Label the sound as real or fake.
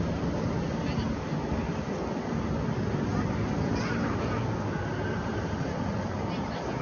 real